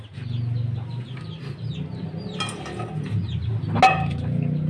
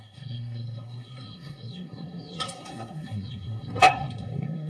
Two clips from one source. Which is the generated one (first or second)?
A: second